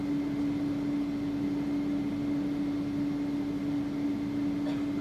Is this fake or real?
real